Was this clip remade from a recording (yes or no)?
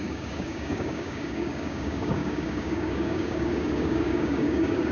yes